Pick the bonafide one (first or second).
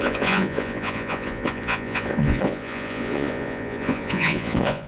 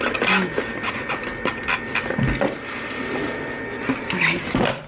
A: second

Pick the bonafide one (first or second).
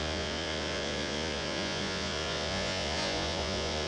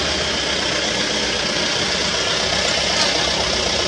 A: second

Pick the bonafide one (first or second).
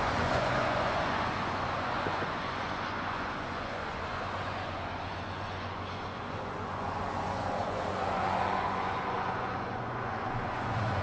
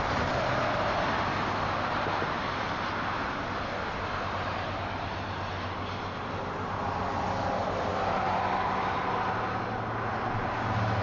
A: second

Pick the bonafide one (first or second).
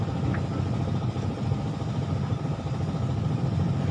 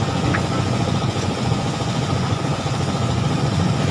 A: first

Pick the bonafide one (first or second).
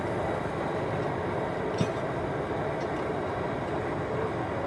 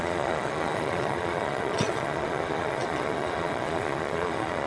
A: first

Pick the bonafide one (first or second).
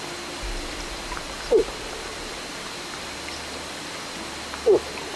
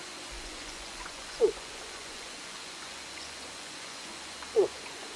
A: first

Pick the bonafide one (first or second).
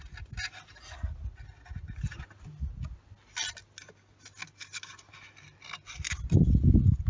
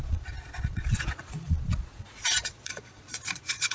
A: first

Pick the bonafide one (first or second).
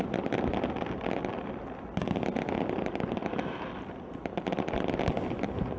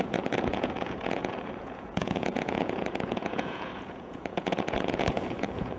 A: first